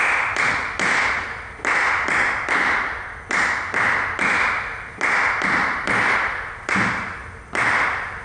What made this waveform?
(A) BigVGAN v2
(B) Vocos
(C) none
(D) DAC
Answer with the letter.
C